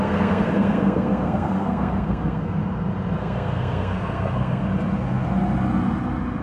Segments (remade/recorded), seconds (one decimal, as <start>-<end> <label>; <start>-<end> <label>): 0.0-2.6 remade; 2.6-3.2 recorded; 3.2-4.6 remade; 4.6-6.4 recorded